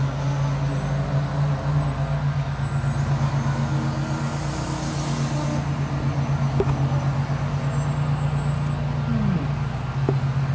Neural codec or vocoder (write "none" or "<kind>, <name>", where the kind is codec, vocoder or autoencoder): none